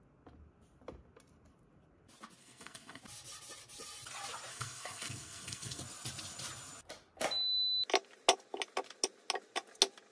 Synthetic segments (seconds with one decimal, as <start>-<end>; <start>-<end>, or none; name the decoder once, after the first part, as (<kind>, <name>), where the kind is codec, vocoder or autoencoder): 2.4-3.0 (codec, SNAC); 4.5-5.8